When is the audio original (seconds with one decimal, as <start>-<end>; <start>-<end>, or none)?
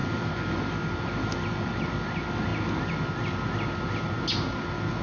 0.0-5.0